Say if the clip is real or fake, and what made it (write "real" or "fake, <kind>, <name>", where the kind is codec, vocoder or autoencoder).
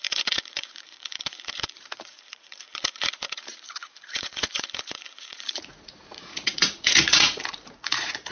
fake, vocoder, Vocos